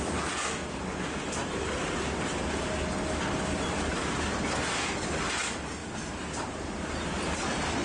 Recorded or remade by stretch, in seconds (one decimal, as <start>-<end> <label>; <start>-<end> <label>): 0.0-7.8 recorded